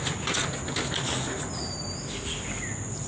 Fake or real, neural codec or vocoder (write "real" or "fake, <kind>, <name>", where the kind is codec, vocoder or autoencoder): real